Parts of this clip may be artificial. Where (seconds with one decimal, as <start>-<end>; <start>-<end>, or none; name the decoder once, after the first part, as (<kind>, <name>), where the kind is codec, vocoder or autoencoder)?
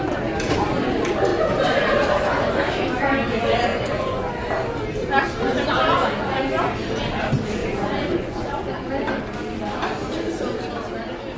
3.7-4.3 (vocoder, Vocos); 7.6-8.9